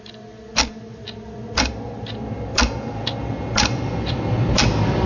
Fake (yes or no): no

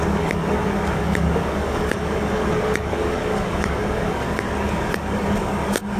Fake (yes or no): yes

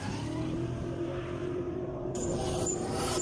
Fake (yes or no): yes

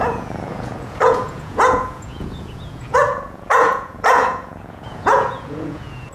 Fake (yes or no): yes